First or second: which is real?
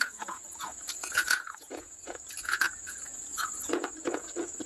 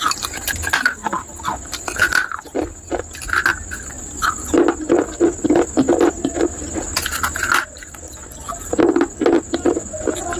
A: second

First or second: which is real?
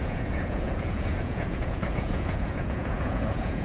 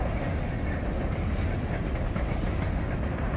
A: second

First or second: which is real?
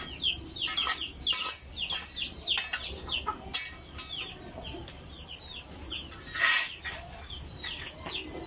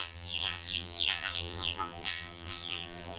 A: first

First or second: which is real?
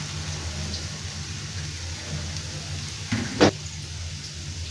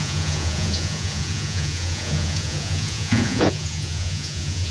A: first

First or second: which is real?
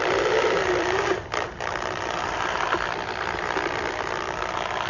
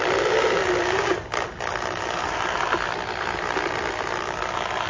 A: second